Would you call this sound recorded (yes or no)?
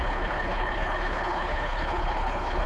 no